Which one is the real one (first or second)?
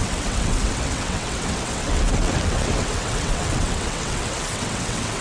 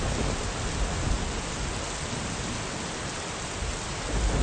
second